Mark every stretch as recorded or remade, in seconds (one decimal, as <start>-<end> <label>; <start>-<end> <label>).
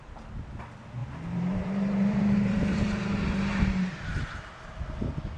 0.0-1.0 recorded; 1.0-4.2 remade; 4.2-5.4 recorded